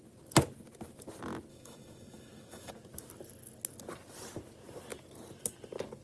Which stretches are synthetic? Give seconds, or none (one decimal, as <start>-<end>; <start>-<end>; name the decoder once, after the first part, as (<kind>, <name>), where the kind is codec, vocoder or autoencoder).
1.5-2.7 (autoencoder, DAC-VAE)